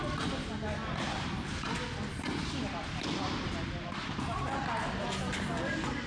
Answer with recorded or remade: recorded